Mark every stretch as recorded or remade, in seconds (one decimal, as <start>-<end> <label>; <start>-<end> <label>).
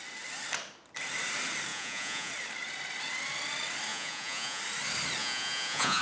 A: 0.0-1.7 recorded; 1.7-2.3 remade; 2.3-3.9 recorded; 3.9-4.6 remade; 4.6-5.2 recorded; 5.2-6.0 remade